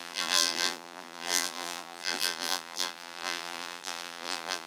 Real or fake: fake